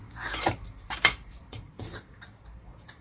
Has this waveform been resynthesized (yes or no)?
yes